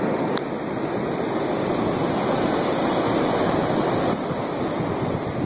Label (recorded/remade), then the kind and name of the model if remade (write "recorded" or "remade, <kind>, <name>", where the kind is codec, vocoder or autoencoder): recorded